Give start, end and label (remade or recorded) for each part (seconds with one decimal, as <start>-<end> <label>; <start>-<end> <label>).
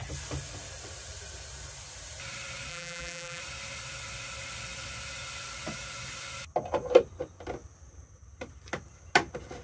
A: 0.0-2.7 recorded; 2.7-3.4 remade; 3.4-9.6 recorded